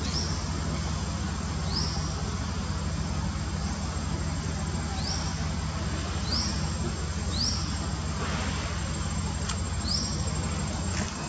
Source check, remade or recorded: recorded